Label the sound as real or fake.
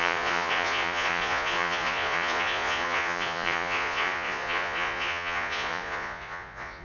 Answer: fake